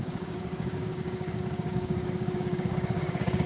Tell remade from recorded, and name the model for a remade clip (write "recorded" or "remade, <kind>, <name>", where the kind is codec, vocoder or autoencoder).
remade, codec, DAC